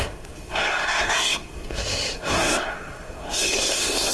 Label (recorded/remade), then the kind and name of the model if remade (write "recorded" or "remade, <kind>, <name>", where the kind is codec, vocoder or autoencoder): remade, codec, SNAC